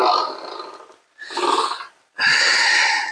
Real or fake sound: real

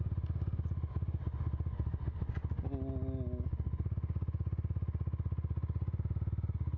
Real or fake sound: real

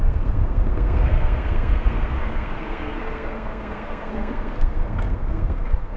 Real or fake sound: fake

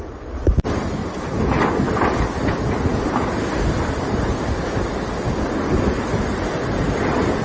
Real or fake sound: real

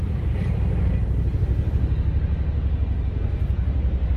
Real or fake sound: real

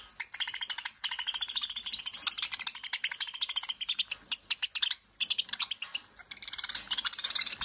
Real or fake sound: real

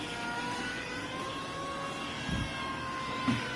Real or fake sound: real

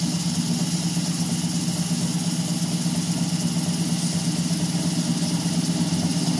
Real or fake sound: real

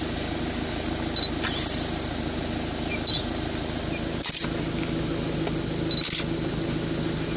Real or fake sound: real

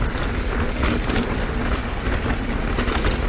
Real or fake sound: real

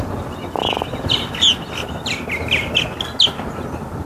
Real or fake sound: real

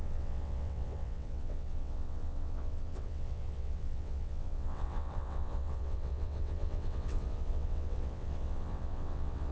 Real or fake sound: fake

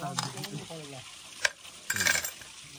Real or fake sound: real